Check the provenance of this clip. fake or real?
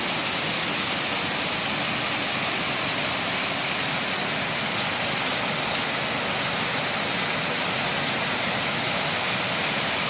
real